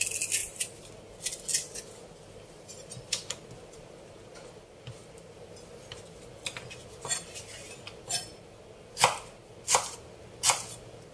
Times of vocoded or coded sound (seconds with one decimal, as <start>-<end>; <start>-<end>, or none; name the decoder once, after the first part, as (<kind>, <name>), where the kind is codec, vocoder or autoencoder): 0.4-0.9 (vocoder, BigVGAN v2); 1.5-3.2; 5.0-5.8

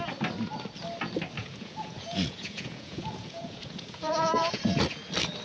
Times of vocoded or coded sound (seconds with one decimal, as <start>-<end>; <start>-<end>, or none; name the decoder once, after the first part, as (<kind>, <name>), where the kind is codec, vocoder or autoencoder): 1.4-4.6 (vocoder, Vocos)

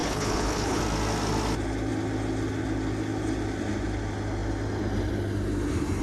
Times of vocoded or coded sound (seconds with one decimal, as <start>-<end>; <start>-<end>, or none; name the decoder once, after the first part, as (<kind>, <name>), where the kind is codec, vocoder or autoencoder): 0.0-0.8 (codec, HILCodec)

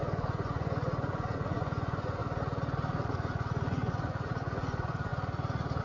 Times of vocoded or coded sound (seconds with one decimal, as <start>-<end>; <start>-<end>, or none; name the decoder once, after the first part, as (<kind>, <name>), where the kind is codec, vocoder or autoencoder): 0.0-2.2 (vocoder, Vocos); 3.1-5.1

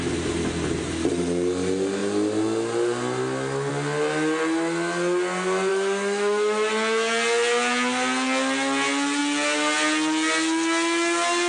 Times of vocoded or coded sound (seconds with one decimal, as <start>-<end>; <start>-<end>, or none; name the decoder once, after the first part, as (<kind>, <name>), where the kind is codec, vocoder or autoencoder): 5.7-6.7 (autoencoder, DAC-VAE)

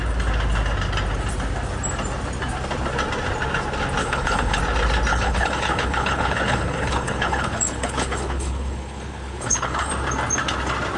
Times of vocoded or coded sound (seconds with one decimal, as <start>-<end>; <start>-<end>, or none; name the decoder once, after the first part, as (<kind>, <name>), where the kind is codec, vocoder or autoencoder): 4.0-4.6 (codec, HILCodec); 5.1-9.9

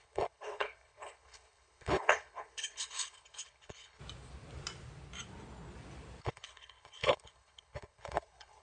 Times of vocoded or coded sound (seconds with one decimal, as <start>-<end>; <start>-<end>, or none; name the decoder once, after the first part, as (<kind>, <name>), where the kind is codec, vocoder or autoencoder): 0.0-4.0 (codec, HILCodec); 6.2-8.6

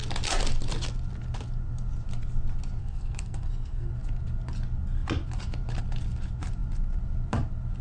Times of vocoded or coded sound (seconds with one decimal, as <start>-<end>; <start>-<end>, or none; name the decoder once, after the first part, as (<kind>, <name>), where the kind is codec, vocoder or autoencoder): 2.8-3.9 (codec, SNAC)